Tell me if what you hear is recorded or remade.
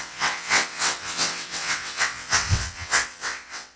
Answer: remade